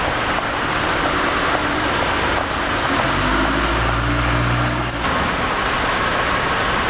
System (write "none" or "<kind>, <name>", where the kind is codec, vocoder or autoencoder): none